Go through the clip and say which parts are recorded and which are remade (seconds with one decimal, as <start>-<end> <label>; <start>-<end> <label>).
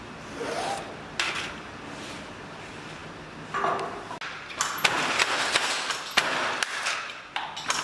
0.0-7.8 recorded